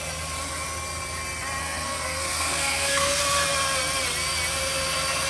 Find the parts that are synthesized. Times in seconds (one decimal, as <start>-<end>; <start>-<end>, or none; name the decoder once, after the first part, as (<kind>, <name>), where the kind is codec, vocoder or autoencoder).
1.6-3.2 (codec, SNAC)